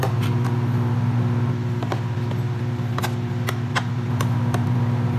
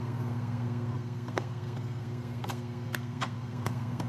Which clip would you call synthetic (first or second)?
second